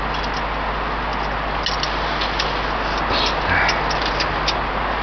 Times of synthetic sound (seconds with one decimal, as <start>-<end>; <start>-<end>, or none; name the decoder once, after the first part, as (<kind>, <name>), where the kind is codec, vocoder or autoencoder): none